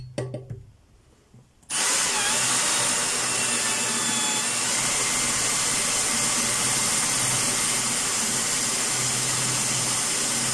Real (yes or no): yes